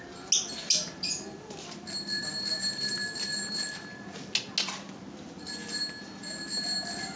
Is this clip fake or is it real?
real